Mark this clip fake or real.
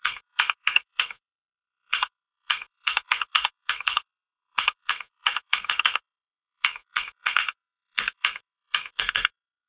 fake